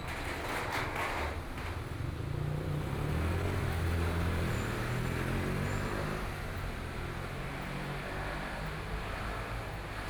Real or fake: real